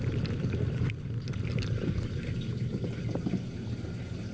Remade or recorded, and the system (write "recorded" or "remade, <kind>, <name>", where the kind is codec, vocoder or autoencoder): recorded